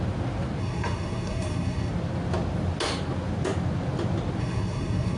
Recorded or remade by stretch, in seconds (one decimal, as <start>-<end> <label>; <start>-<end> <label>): 0.0-0.6 recorded; 0.6-1.9 remade; 1.9-4.4 recorded; 4.4-5.2 remade